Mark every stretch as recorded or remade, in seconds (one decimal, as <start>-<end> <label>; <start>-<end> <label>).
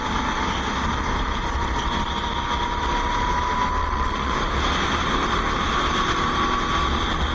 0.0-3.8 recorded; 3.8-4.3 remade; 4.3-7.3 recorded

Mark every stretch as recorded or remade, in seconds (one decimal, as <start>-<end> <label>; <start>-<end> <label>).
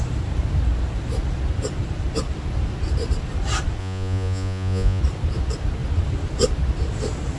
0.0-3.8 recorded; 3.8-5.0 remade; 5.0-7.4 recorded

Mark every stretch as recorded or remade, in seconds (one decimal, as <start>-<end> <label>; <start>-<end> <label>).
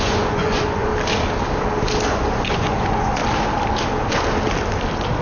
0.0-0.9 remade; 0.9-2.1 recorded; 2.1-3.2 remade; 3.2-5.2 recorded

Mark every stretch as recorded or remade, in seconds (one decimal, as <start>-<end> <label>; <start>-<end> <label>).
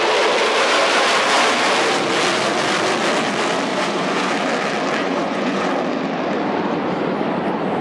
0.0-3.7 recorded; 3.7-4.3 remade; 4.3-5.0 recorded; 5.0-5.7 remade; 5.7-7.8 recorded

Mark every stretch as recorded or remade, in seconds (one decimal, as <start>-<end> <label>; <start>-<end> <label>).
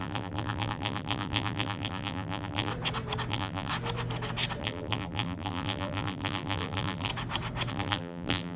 0.0-2.7 remade; 2.7-3.3 recorded; 3.3-3.7 remade; 3.7-4.6 recorded; 4.6-7.1 remade; 7.1-7.7 recorded; 7.7-8.6 remade